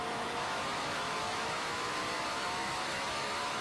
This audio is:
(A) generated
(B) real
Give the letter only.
A